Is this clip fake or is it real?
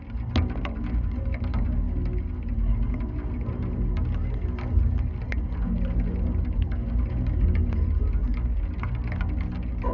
real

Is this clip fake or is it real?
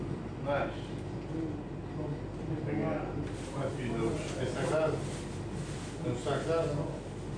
real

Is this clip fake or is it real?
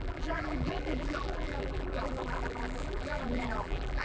fake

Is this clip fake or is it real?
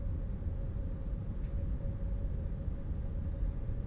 real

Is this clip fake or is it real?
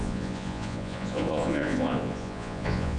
fake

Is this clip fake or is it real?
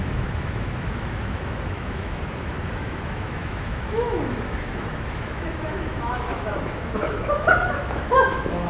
fake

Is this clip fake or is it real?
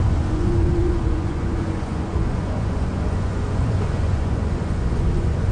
fake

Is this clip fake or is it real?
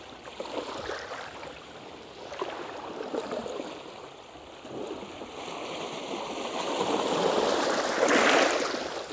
real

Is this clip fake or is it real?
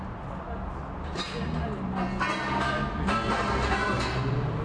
real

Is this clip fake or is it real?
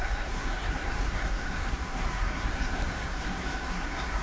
fake